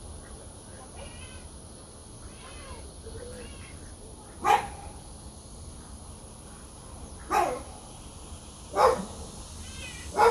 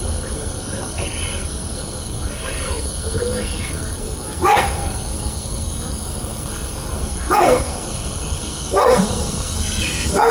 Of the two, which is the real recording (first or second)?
first